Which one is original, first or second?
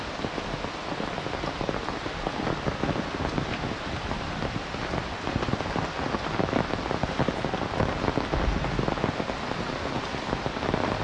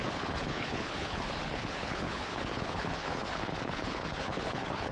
first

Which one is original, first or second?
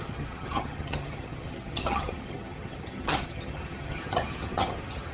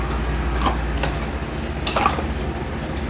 second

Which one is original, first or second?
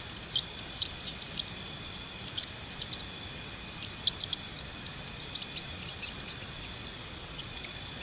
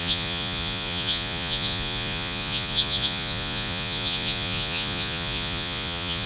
first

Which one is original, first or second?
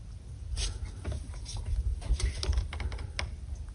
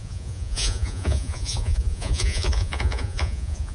first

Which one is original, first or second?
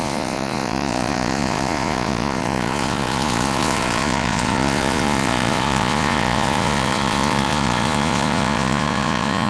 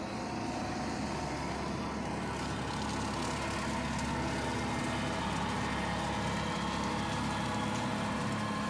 second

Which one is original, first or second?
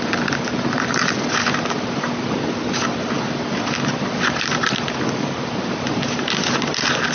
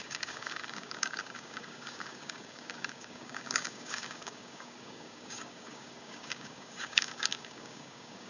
first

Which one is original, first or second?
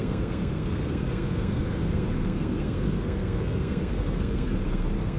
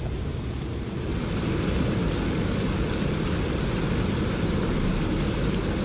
second